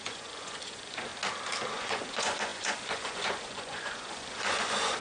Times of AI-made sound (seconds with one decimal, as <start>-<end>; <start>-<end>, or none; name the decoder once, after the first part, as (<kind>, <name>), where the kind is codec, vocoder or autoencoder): 0.0-1.1 (vocoder, Vocos); 1.7-5.0